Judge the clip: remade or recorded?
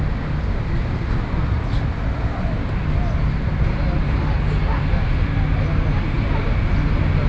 recorded